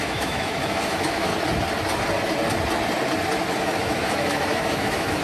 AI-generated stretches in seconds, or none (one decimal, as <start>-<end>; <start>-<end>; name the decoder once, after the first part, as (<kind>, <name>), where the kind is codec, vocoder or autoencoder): 0.0-1.3 (autoencoder, DAC-VAE); 3.6-5.2

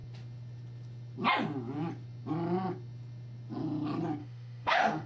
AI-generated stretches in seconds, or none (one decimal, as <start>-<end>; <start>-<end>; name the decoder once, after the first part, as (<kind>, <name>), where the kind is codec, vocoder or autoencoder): 4.2-5.1 (autoencoder, DAC-VAE)